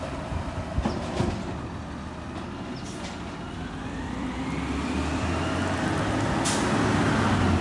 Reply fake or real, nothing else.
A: real